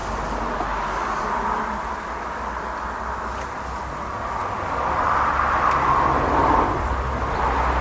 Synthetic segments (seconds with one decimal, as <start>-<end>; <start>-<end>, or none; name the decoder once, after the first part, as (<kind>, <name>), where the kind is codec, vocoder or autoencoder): none